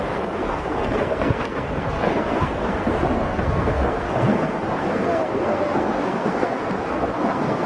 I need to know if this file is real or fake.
fake